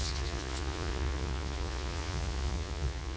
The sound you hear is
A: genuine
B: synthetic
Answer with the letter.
B